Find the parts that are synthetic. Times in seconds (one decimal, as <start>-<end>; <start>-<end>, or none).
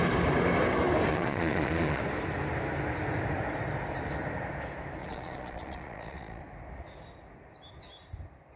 1.1-2.0; 5.0-6.4